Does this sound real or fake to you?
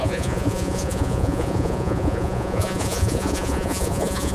fake